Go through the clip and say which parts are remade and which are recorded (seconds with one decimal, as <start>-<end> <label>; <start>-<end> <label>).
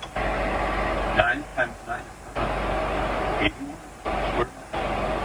0.0-5.2 recorded